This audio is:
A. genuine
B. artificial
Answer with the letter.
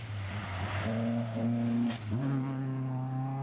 A